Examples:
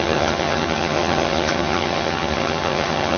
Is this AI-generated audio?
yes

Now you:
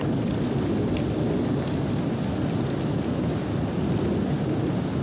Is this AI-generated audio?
no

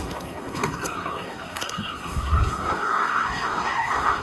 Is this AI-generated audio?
yes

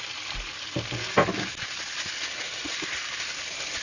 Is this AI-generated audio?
no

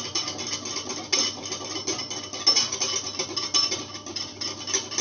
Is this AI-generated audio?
no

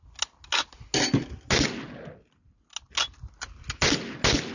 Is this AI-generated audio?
no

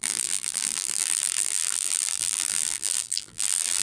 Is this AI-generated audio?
yes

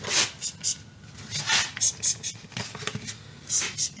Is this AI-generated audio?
no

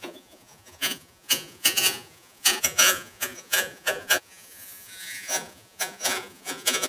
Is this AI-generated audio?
yes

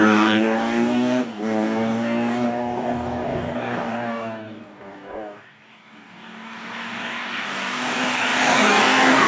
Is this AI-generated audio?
yes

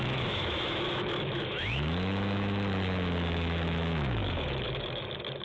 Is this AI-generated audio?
yes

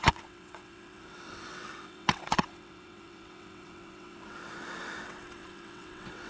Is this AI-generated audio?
yes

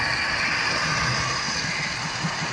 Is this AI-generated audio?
no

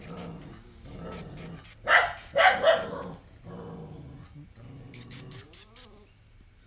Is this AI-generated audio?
no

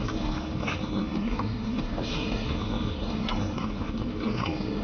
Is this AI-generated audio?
yes